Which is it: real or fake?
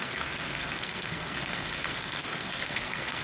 fake